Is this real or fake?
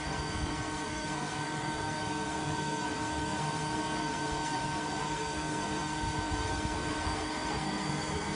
fake